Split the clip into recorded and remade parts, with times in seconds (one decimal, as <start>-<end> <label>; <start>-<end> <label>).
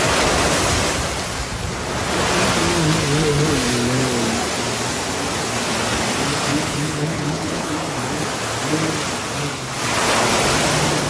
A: 0.0-6.5 recorded; 6.5-7.7 remade; 7.7-11.1 recorded